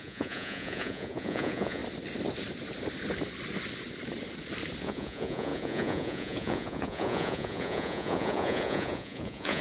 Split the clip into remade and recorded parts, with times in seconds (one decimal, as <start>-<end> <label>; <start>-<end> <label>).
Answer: 0.0-1.8 remade; 1.8-4.8 recorded; 4.8-9.6 remade